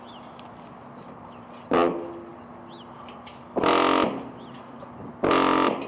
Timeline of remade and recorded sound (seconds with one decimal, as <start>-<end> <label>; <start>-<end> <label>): 0.0-5.9 recorded

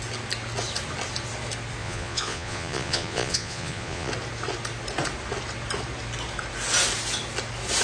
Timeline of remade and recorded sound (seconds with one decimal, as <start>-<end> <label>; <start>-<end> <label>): 0.0-1.8 recorded; 1.8-4.1 remade; 4.1-7.8 recorded

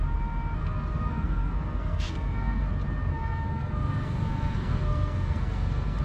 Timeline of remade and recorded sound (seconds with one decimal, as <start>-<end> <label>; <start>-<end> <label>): 0.0-0.6 recorded; 0.6-2.7 remade; 2.7-3.1 recorded; 3.1-6.0 remade

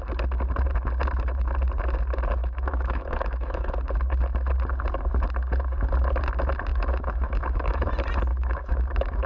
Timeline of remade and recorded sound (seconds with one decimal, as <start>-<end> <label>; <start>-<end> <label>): 0.0-2.4 recorded; 2.4-3.7 remade; 3.7-6.7 recorded; 6.7-7.9 remade; 7.9-8.3 recorded; 8.3-9.3 remade

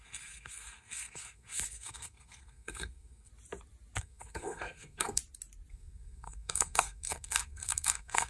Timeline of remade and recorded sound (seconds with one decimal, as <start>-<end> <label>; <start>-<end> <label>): 0.0-3.3 remade; 3.3-4.0 recorded; 4.0-5.2 remade; 5.2-5.7 recorded; 5.7-8.3 remade

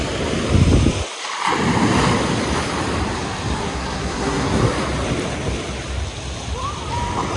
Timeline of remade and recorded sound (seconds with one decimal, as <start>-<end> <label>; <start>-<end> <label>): 0.0-3.6 recorded; 3.6-4.6 remade; 4.6-7.4 recorded

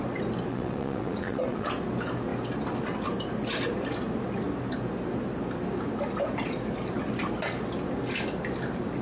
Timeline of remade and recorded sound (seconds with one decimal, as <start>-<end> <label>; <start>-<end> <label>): 0.0-0.5 recorded; 0.5-1.7 remade; 1.7-9.0 recorded

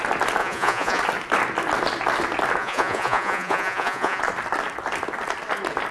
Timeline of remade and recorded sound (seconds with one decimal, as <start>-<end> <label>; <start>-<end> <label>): 0.0-0.4 recorded; 0.4-1.0 remade; 1.0-2.6 recorded; 2.6-4.2 remade; 4.2-5.9 recorded